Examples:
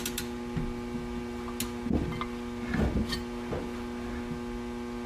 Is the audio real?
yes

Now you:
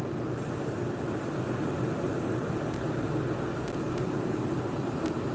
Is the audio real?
yes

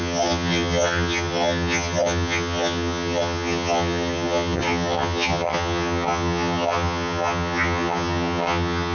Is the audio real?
no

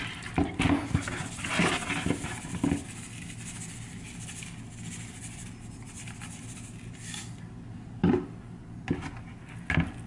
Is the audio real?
yes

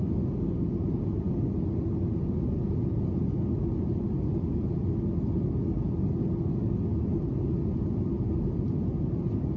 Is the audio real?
yes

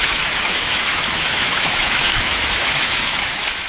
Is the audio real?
no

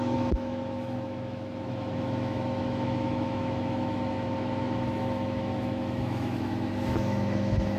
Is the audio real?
no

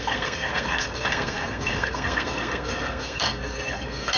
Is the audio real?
no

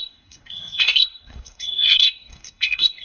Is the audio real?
no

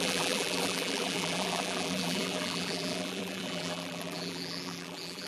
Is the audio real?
no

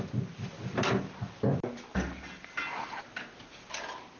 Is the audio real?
yes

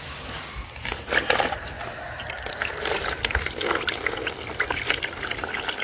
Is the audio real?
yes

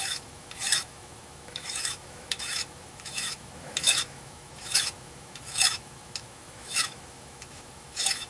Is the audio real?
no